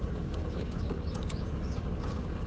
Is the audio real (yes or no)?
no